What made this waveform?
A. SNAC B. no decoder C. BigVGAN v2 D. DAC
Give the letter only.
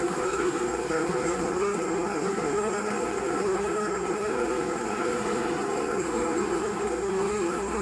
A